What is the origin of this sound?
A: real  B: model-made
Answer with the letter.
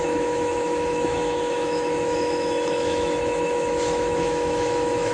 B